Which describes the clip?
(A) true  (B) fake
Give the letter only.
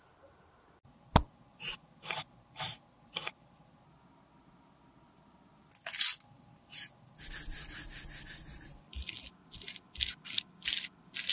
A